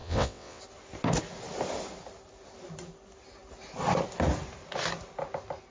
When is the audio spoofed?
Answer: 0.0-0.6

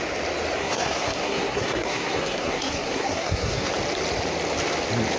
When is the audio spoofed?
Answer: 0.6-3.7

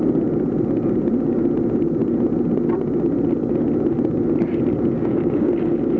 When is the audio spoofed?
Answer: 5.0-5.5

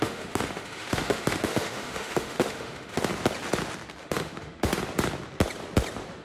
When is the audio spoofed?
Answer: 0.0-3.1; 4.0-4.8

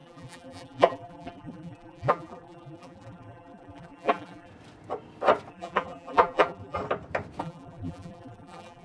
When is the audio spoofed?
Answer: 0.0-4.5; 5.5-6.8; 7.4-8.8

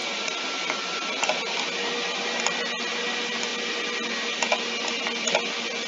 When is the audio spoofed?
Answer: none

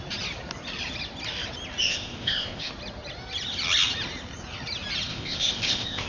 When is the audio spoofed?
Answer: 1.8-2.7; 5.1-6.1

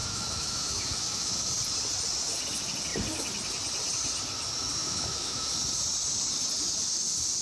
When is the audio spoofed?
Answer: 0.0-1.5; 4.8-5.5